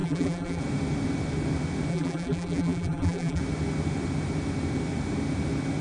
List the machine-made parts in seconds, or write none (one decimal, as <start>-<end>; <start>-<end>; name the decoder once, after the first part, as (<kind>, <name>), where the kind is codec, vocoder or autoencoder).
0.0-0.6 (vocoder, BigVGAN v2); 1.9-3.4